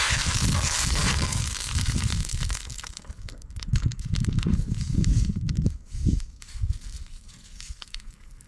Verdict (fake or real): fake